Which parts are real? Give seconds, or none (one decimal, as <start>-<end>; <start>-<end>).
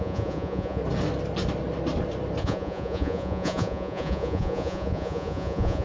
0.8-2.4